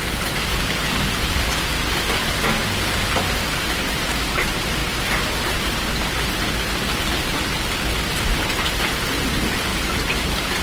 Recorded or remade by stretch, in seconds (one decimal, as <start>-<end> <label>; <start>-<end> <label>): 0.0-9.7 recorded; 9.7-10.6 remade